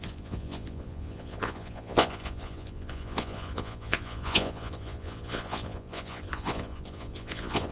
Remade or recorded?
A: remade